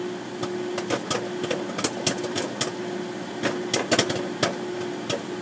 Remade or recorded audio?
recorded